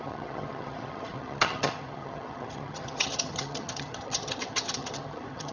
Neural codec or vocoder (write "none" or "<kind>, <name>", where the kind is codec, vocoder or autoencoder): vocoder, HiFi-GAN